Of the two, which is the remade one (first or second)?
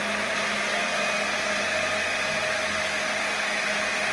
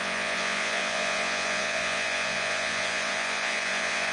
second